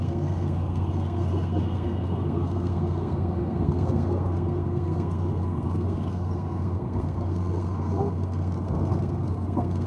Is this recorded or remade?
remade